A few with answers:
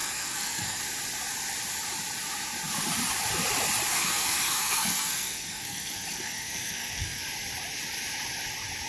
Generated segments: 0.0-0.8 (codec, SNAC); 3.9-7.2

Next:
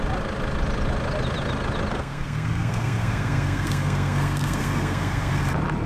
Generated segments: 1.9-5.4 (codec, SNAC)

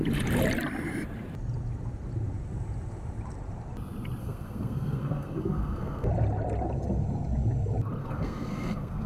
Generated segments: 4.2-6.1 (codec, SNAC); 8.0-9.1

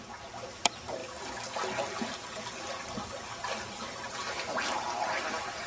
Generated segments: 0.0-1.0 (vocoder, BigVGAN v2); 4.4-5.7

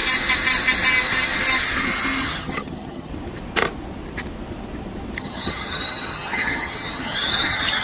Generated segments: 2.2-3.1 (vocoder, HiFi-GAN); 5.2-7.8

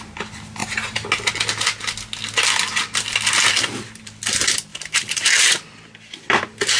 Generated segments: 4.7-5.4 (vocoder, BigVGAN v2)

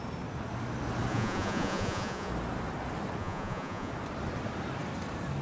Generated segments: 1.1-2.3 (vocoder, Vocos); 3.2-3.9

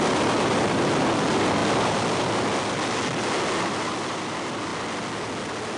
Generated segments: 0.0-1.6 (vocoder, BigVGAN v2); 3.6-4.7